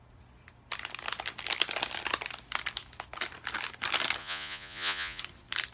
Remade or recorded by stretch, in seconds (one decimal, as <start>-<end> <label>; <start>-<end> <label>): 0.0-4.2 recorded; 4.2-5.2 remade; 5.2-5.7 recorded